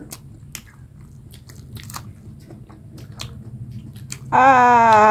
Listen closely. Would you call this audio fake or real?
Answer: real